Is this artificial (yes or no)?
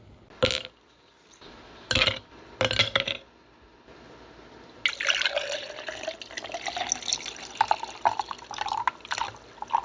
no